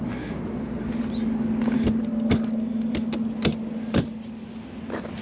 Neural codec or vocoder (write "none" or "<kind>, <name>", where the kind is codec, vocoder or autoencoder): none